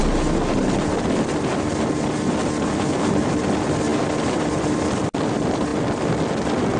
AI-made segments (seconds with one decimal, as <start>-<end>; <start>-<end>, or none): none